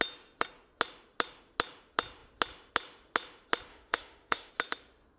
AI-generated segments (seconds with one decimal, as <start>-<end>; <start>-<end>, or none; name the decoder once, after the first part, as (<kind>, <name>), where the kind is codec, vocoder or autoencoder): 3.7-4.5 (autoencoder, DAC-VAE)